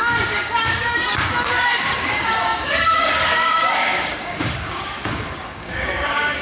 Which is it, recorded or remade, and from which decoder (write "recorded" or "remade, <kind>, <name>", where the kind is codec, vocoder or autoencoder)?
remade, codec, DAC